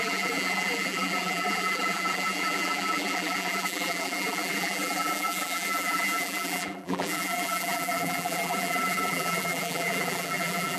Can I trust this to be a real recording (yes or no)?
no